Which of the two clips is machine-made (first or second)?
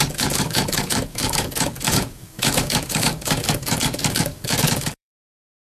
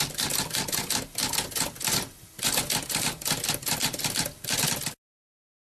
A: first